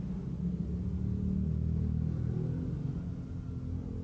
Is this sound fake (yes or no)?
no